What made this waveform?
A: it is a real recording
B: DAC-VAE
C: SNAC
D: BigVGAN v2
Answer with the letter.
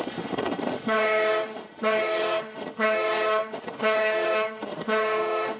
B